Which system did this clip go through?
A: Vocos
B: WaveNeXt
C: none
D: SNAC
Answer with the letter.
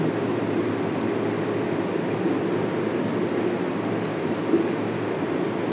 C